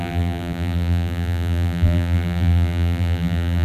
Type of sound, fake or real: fake